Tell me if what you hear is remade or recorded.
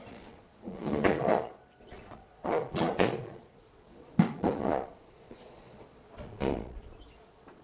remade